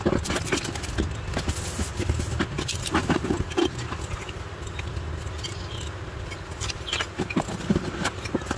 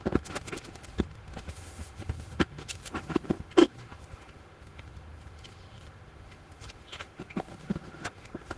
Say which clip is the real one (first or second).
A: first